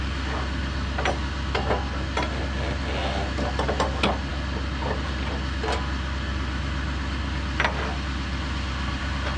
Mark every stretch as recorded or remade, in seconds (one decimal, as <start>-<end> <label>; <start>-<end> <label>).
0.0-9.4 recorded